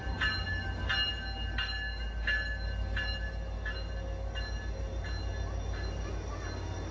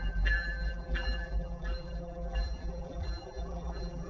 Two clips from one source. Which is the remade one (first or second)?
second